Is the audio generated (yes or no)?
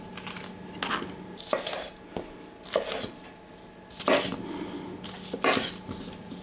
no